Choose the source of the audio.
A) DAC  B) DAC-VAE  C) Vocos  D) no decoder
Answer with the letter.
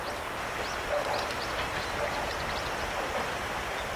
D